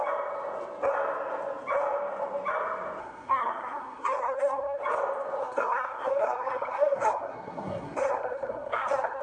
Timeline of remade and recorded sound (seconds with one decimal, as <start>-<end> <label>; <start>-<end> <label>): 0.0-3.0 recorded; 3.0-4.8 remade; 4.8-5.4 recorded; 5.4-9.2 remade